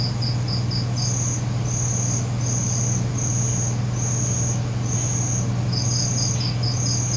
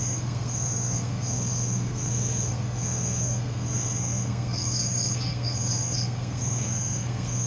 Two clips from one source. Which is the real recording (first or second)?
first